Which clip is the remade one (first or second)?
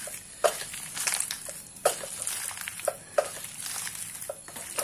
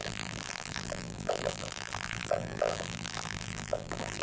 second